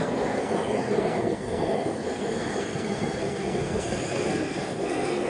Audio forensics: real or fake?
fake